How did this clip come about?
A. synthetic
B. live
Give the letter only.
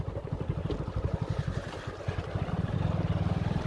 B